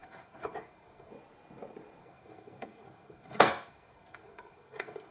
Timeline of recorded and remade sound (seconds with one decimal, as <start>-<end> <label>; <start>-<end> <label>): 0.0-1.1 remade; 1.1-2.0 recorded; 2.0-5.1 remade